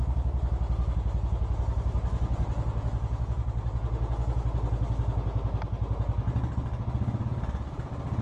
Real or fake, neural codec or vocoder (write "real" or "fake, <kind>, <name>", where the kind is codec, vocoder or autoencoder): real